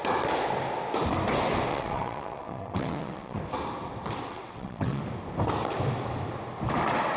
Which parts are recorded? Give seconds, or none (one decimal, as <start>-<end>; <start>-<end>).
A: 0.0-1.7; 3.4-4.3; 5.0-7.2